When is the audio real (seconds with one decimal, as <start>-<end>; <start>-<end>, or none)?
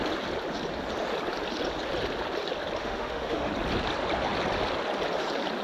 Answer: 0.0-2.8; 3.5-5.6